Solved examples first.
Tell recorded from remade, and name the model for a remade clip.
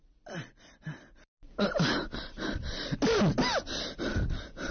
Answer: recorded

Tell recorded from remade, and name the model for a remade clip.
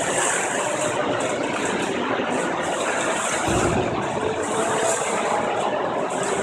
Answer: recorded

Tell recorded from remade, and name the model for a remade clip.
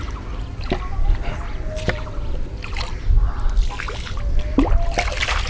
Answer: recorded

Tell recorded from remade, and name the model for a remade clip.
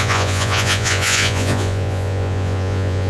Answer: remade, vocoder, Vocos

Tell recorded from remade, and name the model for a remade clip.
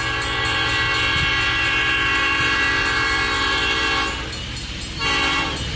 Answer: recorded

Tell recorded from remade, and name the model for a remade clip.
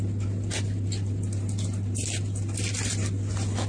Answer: recorded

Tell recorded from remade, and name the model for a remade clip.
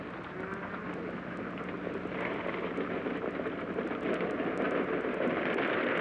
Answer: recorded